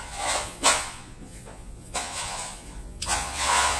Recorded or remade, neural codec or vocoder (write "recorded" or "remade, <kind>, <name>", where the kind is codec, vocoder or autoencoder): remade, vocoder, Vocos